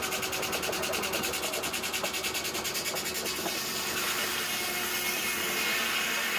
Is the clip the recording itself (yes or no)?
yes